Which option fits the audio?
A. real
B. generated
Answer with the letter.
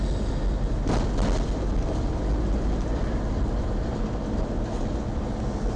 A